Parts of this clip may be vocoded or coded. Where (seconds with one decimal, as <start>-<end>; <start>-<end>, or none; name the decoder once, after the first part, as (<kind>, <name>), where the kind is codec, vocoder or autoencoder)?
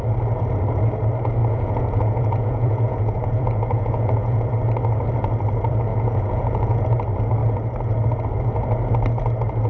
1.4-4.5 (vocoder, Vocos); 5.9-6.8